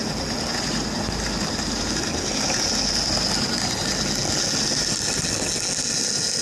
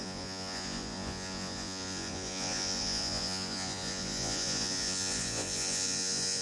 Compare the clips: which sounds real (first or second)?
first